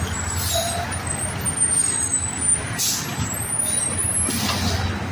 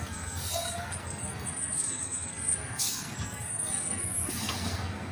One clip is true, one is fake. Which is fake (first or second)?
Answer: second